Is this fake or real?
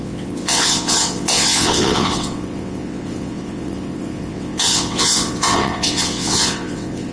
fake